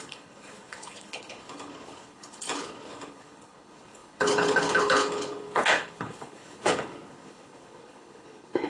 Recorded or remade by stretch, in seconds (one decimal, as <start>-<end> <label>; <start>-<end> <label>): 0.0-8.7 remade